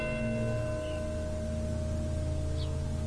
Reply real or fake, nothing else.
real